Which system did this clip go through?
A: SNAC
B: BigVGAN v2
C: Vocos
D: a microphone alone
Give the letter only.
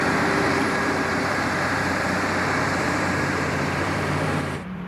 B